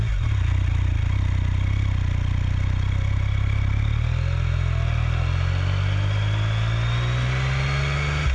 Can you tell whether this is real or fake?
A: real